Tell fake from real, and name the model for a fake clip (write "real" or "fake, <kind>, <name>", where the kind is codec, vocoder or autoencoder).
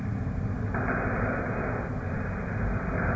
real